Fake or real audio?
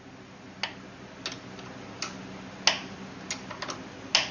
real